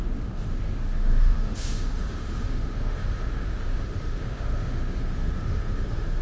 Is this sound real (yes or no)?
no